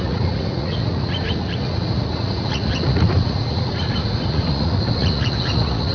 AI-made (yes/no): yes